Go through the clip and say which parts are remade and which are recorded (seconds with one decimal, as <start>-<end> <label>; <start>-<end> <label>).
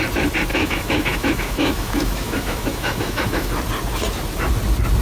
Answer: 0.0-0.5 recorded; 0.5-3.5 remade; 3.5-5.0 recorded